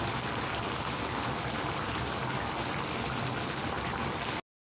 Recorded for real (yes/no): yes